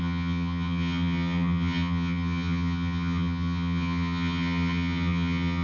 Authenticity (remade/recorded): remade